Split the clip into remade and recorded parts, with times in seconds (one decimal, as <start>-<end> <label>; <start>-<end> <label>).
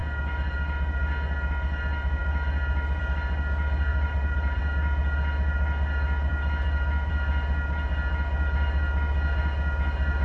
0.0-3.9 recorded; 3.9-4.6 remade; 4.6-10.2 recorded